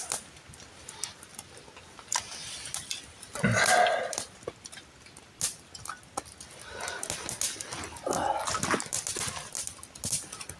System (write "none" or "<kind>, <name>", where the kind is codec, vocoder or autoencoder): none